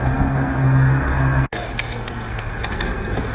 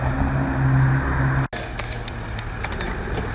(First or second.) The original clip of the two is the second